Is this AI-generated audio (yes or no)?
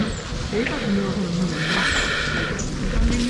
no